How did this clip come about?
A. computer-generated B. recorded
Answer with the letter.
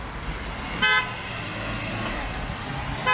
B